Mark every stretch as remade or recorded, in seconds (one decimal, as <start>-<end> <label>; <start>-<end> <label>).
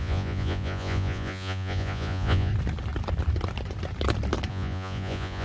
0.0-2.5 remade; 2.5-4.5 recorded; 4.5-5.4 remade